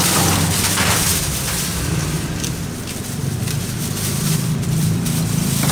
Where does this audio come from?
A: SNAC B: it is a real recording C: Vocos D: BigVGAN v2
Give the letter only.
D